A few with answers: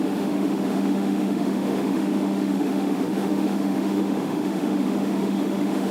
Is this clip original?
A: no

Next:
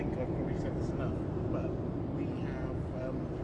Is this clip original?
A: yes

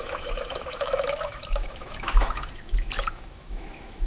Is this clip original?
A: no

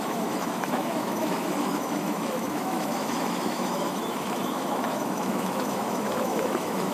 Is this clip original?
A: no